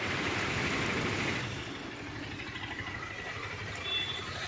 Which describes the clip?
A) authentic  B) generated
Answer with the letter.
A